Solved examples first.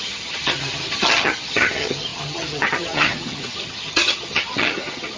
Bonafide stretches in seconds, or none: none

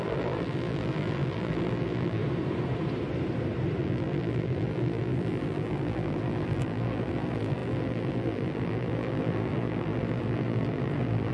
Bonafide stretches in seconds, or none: 2.2-3.8

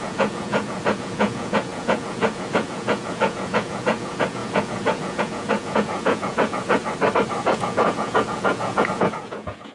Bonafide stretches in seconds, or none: 6.8-7.4